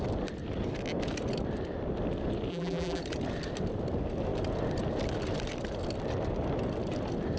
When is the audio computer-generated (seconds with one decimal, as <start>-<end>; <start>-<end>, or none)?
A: 2.5-3.0